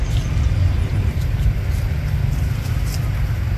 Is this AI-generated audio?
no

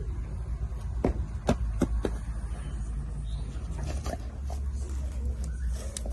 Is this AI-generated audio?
no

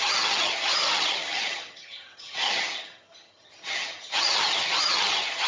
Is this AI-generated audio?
yes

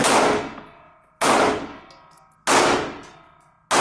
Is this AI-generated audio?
no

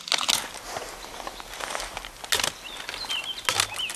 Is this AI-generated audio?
no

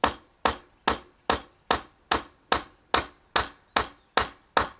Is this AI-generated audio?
no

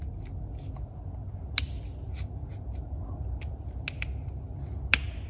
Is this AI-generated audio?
no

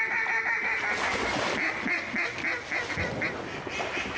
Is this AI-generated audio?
no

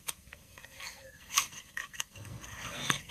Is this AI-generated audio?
yes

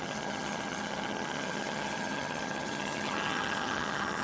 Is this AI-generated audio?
yes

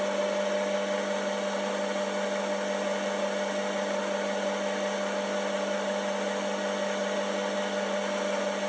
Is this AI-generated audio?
no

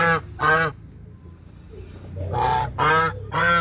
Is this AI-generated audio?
no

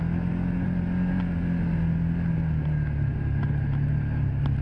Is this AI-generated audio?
no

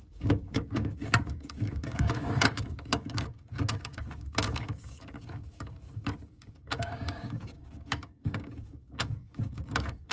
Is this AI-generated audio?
yes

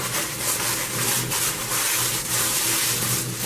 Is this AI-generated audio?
no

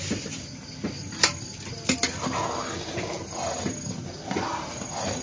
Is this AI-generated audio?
no